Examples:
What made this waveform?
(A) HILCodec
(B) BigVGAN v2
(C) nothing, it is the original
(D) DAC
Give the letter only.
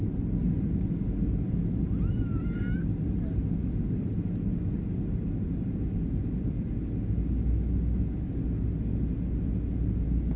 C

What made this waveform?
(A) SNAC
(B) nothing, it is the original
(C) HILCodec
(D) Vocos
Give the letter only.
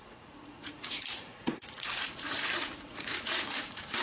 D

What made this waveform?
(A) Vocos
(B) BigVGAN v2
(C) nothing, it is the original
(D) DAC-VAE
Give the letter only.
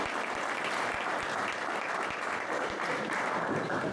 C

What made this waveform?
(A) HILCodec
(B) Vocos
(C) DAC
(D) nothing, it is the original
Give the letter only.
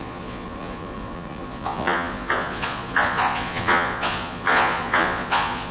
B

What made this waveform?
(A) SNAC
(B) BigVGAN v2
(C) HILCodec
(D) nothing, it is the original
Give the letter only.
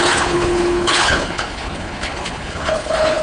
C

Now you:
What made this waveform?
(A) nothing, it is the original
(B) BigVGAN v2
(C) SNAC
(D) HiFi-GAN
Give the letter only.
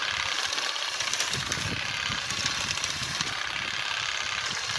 A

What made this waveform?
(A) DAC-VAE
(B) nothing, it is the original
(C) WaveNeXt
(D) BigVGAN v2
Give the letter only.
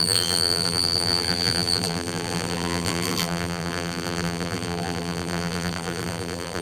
D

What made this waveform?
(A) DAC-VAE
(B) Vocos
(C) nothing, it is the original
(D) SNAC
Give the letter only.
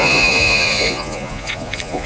B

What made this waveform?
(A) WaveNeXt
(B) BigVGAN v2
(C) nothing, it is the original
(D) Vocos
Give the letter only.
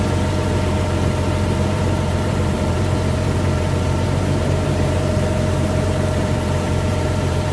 B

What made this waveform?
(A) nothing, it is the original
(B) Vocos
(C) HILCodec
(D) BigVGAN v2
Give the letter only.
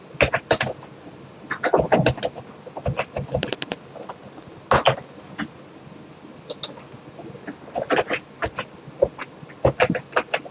A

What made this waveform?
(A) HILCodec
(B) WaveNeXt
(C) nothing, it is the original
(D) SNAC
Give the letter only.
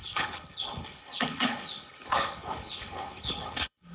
A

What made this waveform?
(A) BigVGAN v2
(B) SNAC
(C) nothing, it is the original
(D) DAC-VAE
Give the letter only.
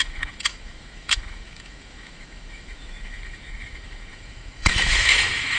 D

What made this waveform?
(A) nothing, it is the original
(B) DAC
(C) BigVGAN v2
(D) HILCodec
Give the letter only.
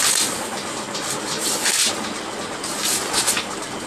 A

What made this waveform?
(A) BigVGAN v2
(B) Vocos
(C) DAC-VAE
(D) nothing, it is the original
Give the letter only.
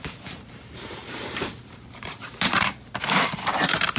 A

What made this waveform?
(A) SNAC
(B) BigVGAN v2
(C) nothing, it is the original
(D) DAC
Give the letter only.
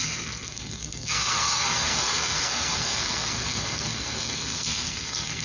A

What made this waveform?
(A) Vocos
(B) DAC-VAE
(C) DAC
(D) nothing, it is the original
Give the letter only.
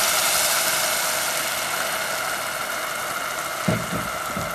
D